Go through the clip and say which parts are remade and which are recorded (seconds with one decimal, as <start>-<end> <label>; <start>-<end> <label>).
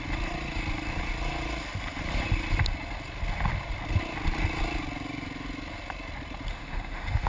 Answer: 0.0-6.5 recorded; 6.5-7.3 remade